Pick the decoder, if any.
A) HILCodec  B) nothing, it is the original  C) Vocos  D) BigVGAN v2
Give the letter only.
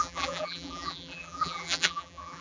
D